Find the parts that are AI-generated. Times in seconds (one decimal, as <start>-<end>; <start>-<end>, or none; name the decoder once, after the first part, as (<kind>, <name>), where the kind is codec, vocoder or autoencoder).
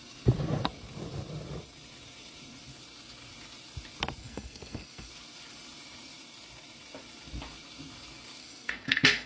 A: 4.2-5.1 (codec, SNAC); 8.4-9.3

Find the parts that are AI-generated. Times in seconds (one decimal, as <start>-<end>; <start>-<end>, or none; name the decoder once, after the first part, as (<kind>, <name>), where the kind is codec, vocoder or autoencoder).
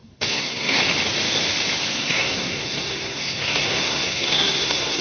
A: 0.0-0.8 (codec, SNAC); 1.9-5.0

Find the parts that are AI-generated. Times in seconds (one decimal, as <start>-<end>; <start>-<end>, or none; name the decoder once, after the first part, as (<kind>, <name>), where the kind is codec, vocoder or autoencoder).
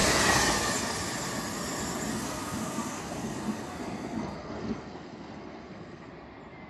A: 2.1-6.1 (codec, SNAC)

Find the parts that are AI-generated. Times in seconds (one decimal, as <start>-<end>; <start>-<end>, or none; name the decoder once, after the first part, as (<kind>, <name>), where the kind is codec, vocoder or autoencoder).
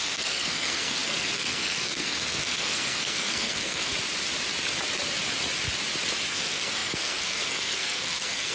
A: 0.0-3.9 (codec, SNAC); 6.3-8.5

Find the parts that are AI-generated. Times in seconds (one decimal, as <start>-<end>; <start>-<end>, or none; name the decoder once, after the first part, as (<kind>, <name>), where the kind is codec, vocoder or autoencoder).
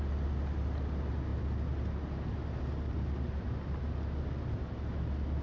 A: none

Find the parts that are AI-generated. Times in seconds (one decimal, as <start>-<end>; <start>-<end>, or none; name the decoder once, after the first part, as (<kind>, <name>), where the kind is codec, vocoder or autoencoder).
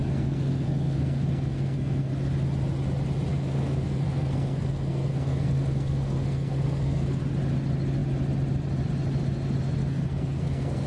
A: 0.0-2.1 (codec, SNAC); 3.3-7.2; 9.8-10.9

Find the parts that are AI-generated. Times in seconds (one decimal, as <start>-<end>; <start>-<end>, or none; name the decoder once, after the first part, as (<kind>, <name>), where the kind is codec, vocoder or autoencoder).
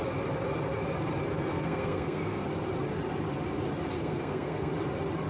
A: 1.5-2.5 (codec, SNAC); 4.0-4.7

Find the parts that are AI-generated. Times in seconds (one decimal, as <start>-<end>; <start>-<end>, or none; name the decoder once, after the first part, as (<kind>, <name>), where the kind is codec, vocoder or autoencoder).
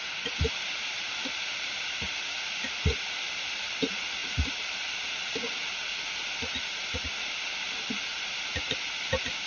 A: none